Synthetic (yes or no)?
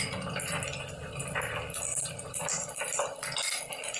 no